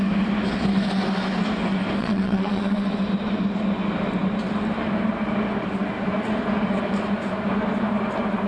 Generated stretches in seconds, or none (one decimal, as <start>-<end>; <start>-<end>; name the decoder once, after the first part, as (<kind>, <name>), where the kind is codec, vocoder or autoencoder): 2.0-2.9 (vocoder, WaveNeXt)